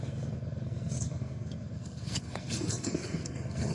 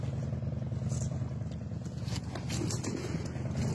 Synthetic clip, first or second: first